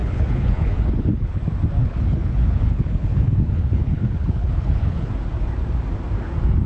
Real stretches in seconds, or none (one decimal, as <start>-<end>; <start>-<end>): 1.4-1.8; 5.1-6.7